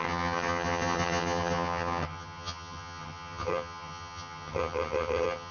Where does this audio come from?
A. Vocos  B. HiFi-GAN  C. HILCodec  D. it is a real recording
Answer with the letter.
B